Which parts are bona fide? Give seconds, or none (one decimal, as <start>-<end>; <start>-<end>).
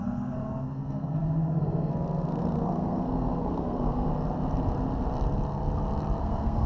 4.1-6.2